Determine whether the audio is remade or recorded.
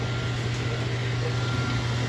recorded